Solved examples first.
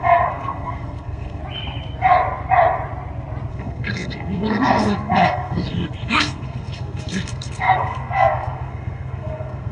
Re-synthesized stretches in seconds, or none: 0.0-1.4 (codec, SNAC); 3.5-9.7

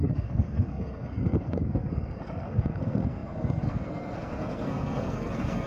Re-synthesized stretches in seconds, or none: 0.0-5.7 (codec, SNAC)

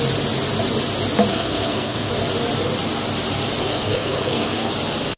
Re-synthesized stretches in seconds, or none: 1.3-2.1 (codec, SNAC); 3.6-4.7

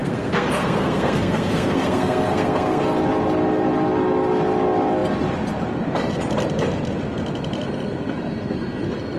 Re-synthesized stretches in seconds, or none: 0.0-2.8 (codec, SNAC)